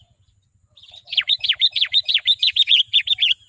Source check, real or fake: fake